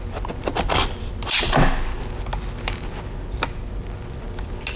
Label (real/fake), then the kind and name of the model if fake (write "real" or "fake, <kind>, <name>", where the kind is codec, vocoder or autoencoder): real